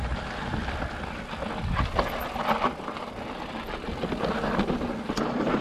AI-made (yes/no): no